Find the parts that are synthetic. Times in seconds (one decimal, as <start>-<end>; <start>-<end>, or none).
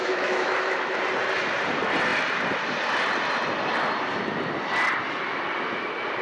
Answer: 0.0-1.0